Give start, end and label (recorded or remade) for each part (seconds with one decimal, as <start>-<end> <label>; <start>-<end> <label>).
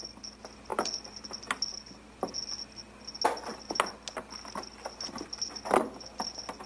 0.0-6.7 recorded